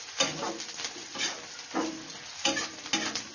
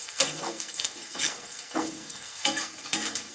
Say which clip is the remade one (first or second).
second